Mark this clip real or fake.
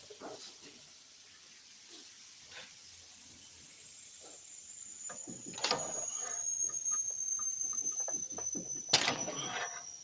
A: real